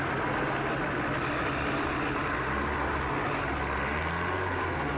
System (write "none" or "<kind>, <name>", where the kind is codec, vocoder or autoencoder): none